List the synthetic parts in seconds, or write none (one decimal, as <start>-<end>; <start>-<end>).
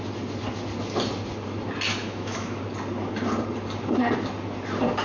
2.0-2.6